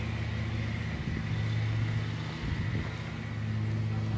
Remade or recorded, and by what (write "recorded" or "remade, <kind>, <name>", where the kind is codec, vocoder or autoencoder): recorded